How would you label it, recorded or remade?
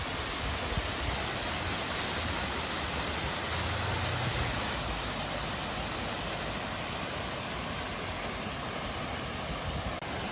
recorded